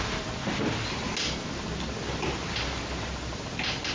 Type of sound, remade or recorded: recorded